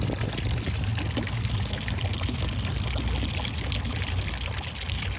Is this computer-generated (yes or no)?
no